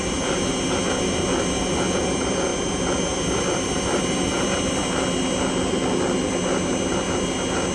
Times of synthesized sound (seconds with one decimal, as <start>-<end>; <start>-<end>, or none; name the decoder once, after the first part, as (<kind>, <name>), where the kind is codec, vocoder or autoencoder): none